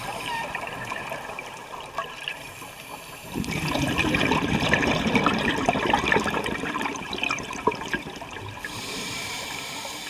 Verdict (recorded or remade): remade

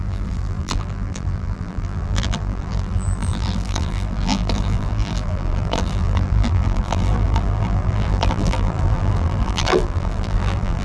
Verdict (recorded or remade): remade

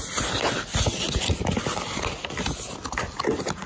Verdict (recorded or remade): recorded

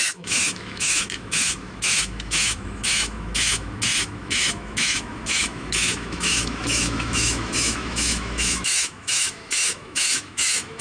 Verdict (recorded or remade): remade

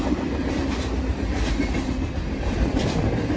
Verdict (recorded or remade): recorded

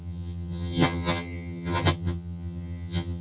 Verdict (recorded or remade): remade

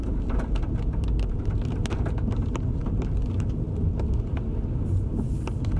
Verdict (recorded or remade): recorded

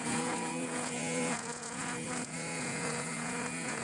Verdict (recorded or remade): remade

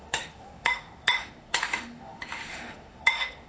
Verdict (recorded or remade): remade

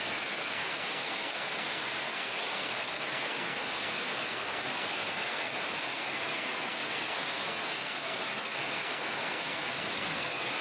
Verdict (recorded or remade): remade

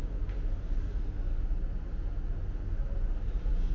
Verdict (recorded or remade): recorded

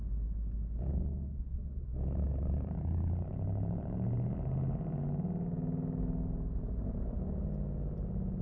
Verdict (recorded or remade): recorded